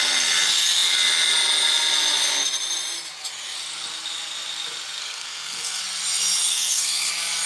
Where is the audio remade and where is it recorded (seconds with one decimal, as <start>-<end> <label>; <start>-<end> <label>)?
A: 0.0-5.0 recorded; 5.0-5.8 remade; 5.8-6.5 recorded; 6.5-7.1 remade; 7.1-7.5 recorded